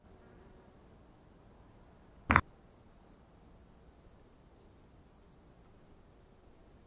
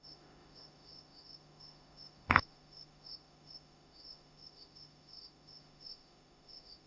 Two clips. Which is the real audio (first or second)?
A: first